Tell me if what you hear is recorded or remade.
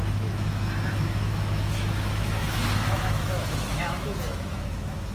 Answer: remade